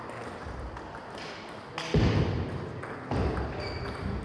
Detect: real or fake real